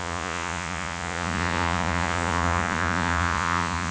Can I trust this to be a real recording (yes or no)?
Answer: no